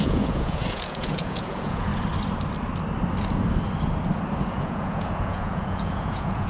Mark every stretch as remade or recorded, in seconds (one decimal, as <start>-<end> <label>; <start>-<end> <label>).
0.0-1.9 remade; 1.9-4.4 recorded; 4.4-6.5 remade